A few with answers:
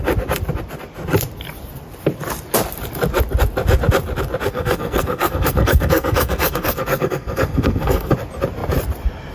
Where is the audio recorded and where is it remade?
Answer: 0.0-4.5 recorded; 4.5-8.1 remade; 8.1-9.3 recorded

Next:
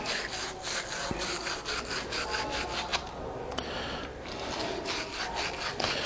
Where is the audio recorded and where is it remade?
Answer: 0.0-6.1 recorded

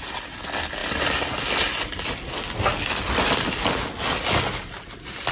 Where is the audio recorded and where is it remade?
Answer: 0.0-5.3 recorded

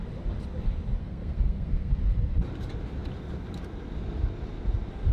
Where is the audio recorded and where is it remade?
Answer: 0.0-1.0 recorded; 1.0-1.9 remade; 1.9-5.1 recorded